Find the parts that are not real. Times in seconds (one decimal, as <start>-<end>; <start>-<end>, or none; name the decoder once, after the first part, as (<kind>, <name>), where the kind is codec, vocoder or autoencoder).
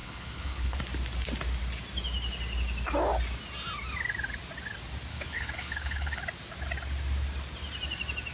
0.0-0.8 (codec, HILCodec); 5.1-6.2